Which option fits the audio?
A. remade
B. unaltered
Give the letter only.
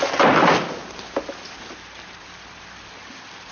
B